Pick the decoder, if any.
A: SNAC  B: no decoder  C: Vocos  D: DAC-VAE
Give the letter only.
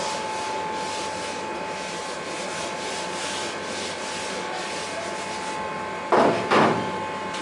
B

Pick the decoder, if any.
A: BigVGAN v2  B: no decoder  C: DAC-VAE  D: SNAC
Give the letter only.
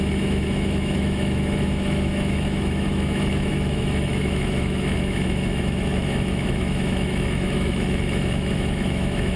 C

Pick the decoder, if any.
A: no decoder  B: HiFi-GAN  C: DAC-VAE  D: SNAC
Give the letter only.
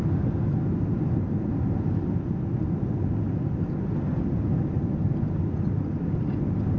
A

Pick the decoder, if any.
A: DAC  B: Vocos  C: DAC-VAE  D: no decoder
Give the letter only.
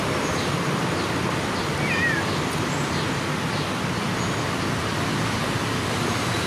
D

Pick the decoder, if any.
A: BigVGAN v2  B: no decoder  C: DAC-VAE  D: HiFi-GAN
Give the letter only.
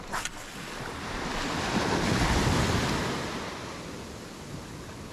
B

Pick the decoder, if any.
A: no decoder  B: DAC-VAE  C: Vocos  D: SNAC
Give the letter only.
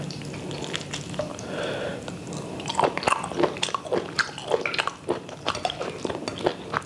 A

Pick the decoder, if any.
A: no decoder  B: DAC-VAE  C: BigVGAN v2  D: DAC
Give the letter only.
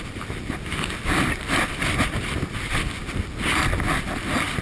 A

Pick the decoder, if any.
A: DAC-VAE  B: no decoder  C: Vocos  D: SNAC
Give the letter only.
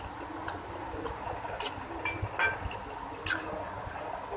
B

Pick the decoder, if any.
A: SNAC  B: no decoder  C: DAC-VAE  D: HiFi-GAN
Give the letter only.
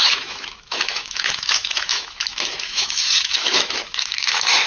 C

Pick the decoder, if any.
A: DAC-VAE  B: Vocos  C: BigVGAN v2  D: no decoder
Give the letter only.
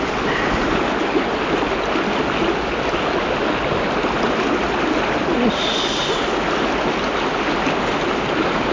D